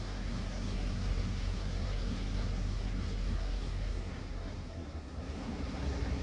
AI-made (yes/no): yes